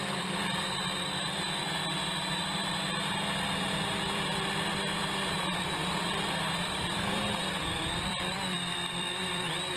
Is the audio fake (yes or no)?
yes